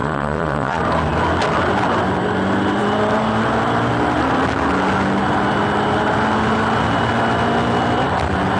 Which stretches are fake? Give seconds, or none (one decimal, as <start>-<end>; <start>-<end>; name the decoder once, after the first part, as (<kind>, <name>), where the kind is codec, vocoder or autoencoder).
0.0-0.8 (vocoder, Vocos)